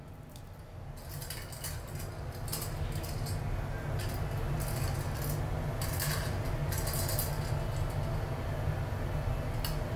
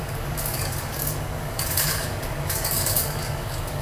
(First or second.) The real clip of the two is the first